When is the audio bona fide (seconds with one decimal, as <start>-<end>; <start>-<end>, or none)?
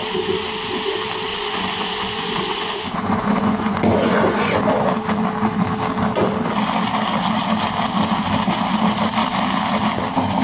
0.0-1.3; 4.6-10.4